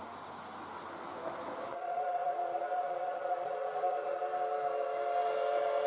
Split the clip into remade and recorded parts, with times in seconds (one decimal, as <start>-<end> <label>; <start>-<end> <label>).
0.0-1.7 recorded; 1.7-4.2 remade; 4.2-5.9 recorded

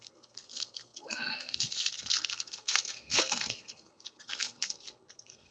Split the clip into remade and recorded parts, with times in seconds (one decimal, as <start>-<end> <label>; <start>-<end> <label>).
0.0-5.5 remade